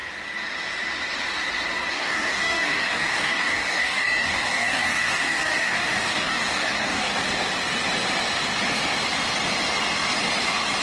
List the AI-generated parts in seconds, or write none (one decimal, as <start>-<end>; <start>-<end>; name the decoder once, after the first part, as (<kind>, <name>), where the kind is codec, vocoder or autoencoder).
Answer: 1.9-7.1 (codec, DAC)